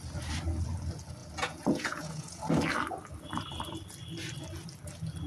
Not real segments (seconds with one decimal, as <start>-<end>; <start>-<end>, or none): 1.2-2.4